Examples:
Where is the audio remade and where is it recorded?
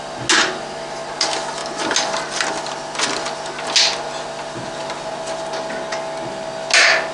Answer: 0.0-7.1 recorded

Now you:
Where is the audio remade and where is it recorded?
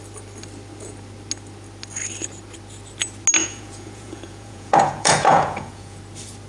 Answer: 0.0-3.4 recorded; 3.4-6.0 remade; 6.0-6.5 recorded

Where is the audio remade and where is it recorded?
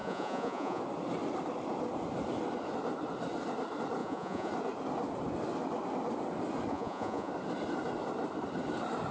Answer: 0.0-0.8 remade; 0.8-4.0 recorded; 4.0-4.5 remade; 4.5-6.7 recorded; 6.7-7.3 remade; 7.3-9.1 recorded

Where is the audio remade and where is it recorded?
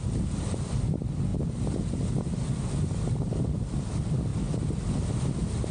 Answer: 0.0-5.7 recorded